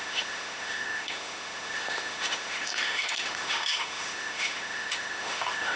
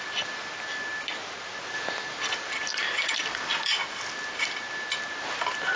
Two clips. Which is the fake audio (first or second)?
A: first